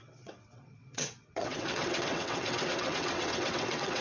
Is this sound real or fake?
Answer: fake